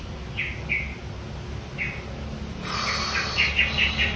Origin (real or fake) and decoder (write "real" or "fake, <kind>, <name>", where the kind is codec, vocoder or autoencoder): real